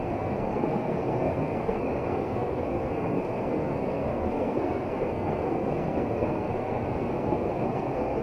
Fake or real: fake